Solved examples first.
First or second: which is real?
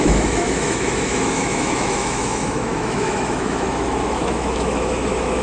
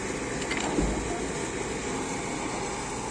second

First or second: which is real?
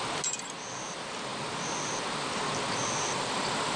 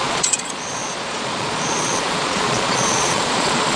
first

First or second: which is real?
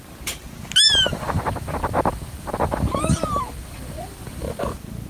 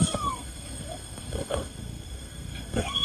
first